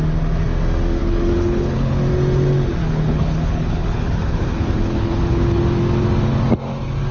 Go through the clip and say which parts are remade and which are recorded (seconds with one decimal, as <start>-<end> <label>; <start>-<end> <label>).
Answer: 0.0-1.0 recorded; 1.0-2.0 remade; 2.0-2.8 recorded; 2.8-5.6 remade; 5.6-7.1 recorded